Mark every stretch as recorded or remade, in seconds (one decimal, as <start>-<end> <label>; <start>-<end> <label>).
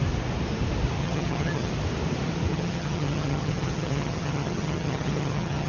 0.0-1.0 recorded; 1.0-1.7 remade; 1.7-2.5 recorded; 2.5-5.7 remade